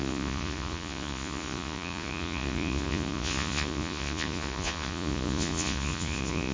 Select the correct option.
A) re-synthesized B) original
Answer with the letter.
A